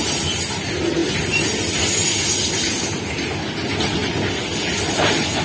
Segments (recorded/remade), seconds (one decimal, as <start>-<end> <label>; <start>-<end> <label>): 0.0-5.4 recorded